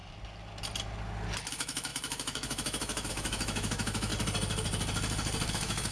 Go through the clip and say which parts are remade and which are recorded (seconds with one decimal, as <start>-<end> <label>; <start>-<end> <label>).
0.0-1.5 recorded; 1.5-4.1 remade; 4.1-5.5 recorded; 5.5-5.9 remade